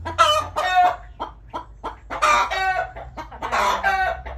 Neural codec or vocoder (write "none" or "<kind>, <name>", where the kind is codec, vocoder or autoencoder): none